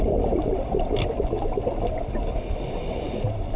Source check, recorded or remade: recorded